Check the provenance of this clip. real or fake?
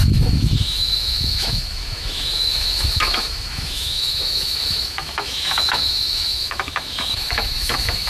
fake